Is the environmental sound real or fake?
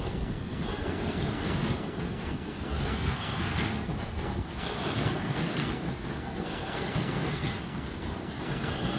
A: fake